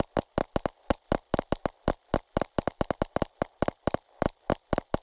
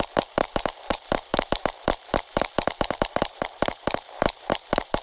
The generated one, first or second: second